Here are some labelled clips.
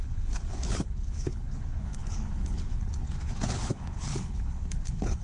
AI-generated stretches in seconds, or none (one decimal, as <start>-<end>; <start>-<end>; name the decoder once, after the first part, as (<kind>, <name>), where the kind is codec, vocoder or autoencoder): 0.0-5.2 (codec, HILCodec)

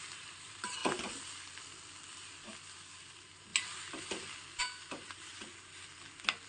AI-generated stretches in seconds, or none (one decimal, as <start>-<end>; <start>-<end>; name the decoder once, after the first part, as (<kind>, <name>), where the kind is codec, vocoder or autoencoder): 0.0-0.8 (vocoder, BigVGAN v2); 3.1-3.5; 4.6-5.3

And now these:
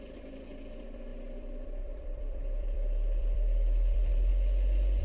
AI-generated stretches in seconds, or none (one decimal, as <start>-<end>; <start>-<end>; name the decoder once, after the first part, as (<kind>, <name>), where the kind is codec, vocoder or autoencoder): 0.0-4.3 (vocoder, BigVGAN v2)